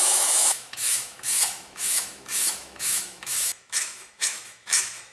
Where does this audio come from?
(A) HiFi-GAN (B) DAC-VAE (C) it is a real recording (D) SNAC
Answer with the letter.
B